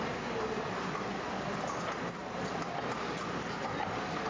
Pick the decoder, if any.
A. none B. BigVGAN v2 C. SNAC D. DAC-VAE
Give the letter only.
A